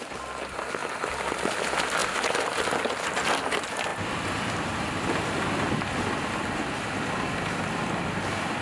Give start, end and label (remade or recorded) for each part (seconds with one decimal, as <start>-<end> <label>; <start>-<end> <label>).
0.0-0.8 recorded; 0.8-1.6 remade; 1.6-3.9 recorded; 3.9-8.6 remade